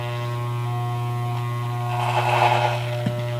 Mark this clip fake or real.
real